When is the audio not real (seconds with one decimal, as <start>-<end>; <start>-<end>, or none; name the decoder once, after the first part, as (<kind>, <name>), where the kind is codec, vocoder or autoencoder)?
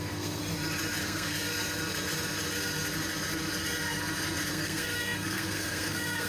0.0-0.4 (codec, SNAC); 1.0-1.5; 4.5-6.3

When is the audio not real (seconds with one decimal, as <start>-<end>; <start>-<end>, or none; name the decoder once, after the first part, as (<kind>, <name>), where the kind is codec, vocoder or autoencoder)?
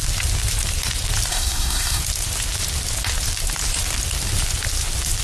1.3-2.0 (codec, SNAC)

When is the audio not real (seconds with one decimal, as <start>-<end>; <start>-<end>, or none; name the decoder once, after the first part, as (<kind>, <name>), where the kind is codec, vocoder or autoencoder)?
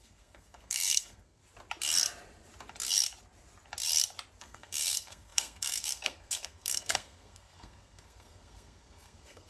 0.0-1.4 (codec, SNAC); 4.4-9.5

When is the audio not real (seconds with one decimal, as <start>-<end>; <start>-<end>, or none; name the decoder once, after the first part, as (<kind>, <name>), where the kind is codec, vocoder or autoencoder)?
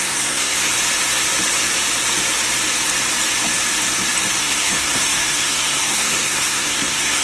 0.0-0.7 (codec, SNAC); 4.4-7.2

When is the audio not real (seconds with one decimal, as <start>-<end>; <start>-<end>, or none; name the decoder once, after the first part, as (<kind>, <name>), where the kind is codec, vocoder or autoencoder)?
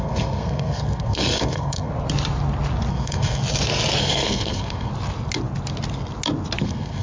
0.0-1.9 (codec, SNAC); 2.9-3.4; 4.0-4.9; 6.6-7.0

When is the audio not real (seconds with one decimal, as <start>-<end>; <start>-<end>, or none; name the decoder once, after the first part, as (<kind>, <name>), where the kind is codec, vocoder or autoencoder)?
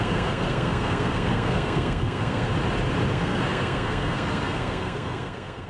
0.0-2.5 (codec, SNAC); 3.1-5.7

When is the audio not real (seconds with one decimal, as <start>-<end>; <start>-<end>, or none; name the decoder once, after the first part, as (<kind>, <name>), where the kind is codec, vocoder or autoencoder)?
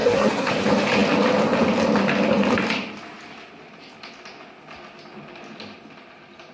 0.0-0.5 (codec, SNAC)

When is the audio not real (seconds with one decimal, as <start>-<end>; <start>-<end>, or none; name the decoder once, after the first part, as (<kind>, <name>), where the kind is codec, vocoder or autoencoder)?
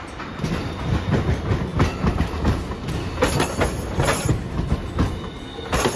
none